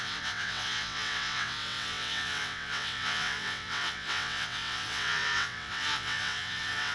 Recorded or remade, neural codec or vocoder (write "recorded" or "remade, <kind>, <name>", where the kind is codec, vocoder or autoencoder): remade, vocoder, WaveNeXt